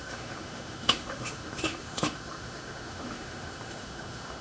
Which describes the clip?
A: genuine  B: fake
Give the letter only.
B